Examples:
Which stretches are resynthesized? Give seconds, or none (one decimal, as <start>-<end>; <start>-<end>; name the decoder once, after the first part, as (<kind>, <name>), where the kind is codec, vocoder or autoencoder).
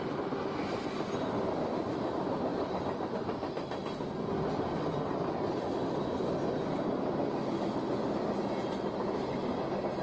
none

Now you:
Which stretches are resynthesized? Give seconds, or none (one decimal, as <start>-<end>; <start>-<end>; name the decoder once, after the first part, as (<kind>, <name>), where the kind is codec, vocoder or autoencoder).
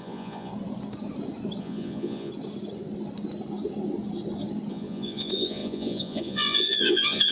0.0-0.5 (vocoder, Vocos); 1.6-2.3; 4.7-7.3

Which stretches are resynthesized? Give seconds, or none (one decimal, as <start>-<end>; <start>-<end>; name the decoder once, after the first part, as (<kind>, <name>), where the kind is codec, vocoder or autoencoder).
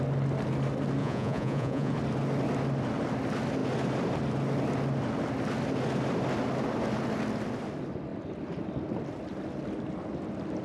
1.0-1.9 (vocoder, Vocos)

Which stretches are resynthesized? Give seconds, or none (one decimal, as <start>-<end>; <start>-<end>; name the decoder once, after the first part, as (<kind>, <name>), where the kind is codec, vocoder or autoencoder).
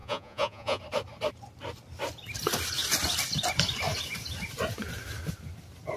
0.0-0.8 (vocoder, Vocos)